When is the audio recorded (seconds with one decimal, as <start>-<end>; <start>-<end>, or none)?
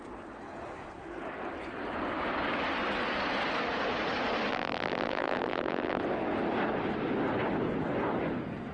0.0-4.5; 6.0-8.7